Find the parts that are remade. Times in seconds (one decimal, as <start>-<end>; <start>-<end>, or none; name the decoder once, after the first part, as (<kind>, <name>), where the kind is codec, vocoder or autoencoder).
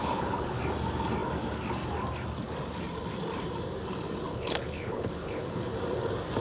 0.0-0.6 (codec, HILCodec); 4.3-5.7